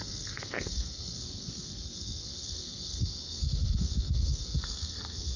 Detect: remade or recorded remade